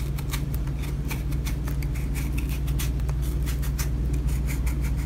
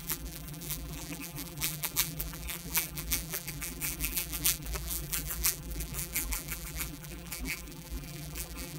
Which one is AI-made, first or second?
second